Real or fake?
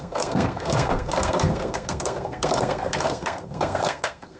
fake